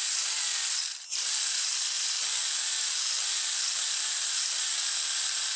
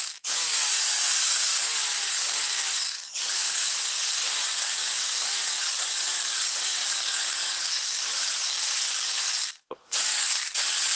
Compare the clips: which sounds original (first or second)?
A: first